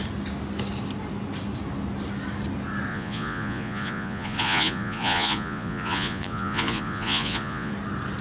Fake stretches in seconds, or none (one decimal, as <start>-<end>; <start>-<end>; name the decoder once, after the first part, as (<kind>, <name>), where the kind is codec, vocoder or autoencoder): 2.9-7.7 (vocoder, Vocos)